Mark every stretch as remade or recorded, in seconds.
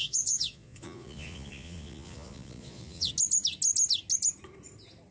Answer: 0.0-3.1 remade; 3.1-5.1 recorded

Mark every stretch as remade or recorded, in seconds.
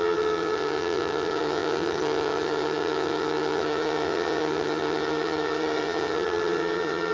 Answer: 0.0-7.1 remade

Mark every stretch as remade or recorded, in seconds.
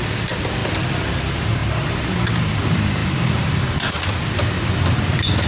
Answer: 0.0-0.6 remade; 0.6-1.2 recorded; 1.2-1.6 remade; 1.6-2.3 recorded; 2.3-5.5 remade